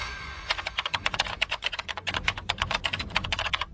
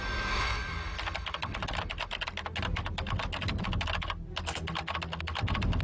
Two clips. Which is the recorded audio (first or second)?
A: second